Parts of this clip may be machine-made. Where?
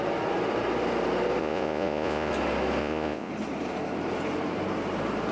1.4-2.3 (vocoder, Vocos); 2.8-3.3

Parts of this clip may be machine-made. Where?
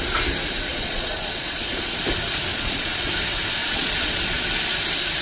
0.7-2.0 (vocoder, Vocos); 2.5-3.1; 3.6-4.4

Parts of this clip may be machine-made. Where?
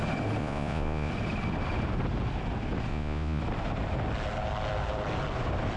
0.4-1.1 (vocoder, Vocos); 2.9-3.4